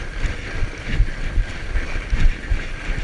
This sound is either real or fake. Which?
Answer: real